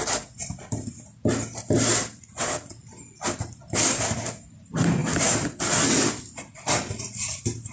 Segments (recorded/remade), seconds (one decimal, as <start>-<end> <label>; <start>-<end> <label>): 0.0-7.7 recorded